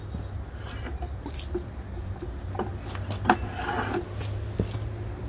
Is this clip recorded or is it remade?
recorded